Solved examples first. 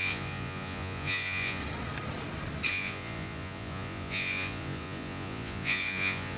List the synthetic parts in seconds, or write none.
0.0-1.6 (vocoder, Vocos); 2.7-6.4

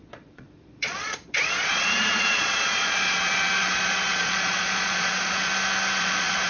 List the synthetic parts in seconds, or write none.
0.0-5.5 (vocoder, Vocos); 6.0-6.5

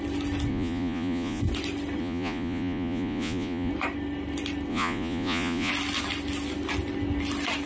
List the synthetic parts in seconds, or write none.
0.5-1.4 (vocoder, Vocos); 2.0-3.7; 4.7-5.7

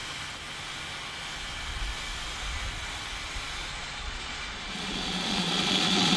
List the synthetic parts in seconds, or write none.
3.7-6.2 (vocoder, Vocos)